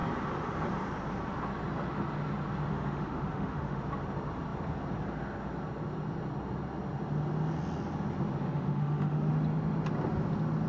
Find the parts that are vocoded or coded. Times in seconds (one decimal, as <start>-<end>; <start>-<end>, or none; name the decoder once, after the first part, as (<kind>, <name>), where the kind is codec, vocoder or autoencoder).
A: 2.7-3.8 (autoencoder, DAC-VAE); 8.5-9.3